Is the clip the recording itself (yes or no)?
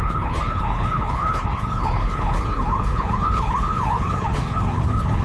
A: no